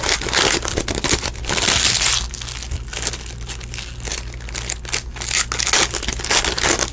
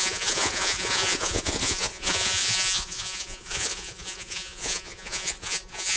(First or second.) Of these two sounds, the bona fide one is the first